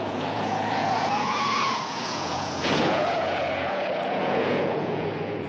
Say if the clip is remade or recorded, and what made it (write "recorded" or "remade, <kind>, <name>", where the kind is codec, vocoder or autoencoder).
remade, vocoder, Vocos